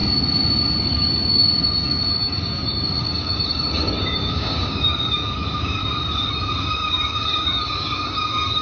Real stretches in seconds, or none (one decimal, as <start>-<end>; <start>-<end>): 0.0-0.8; 1.4-2.1; 5.8-6.6